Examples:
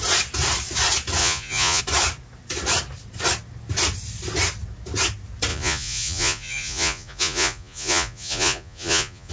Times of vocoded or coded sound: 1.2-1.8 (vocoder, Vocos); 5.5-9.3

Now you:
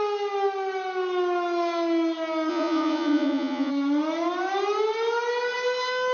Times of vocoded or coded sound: 2.5-3.7 (vocoder, Vocos)

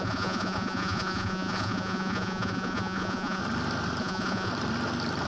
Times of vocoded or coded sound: 0.0-3.4 (vocoder, Vocos); 4.0-4.5

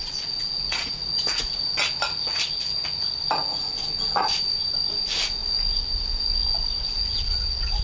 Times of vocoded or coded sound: 0.0-1.6 (vocoder, Vocos)

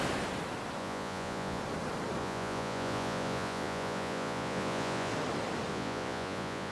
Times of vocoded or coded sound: 0.8-1.6 (vocoder, Vocos); 2.2-5.1; 5.7-6.7

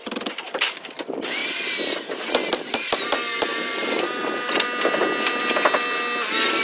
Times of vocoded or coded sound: none

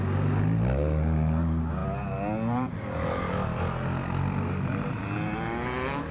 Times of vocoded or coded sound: none

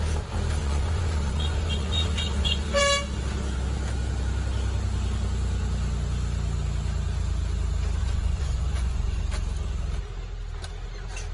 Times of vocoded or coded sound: 0.6-2.8 (vocoder, Vocos); 8.0-9.2